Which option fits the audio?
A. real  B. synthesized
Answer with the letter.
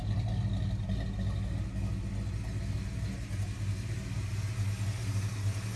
A